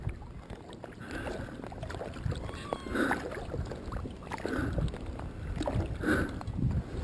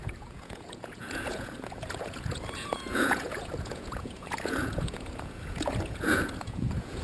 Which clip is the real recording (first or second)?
first